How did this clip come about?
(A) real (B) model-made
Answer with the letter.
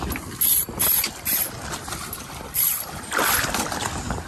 A